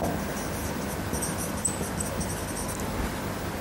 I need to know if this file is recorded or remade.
recorded